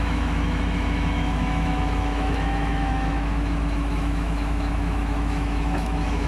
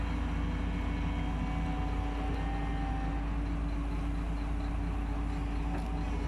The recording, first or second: second